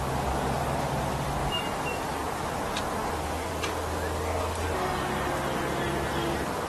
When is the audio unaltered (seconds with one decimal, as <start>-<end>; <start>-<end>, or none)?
0.0-6.7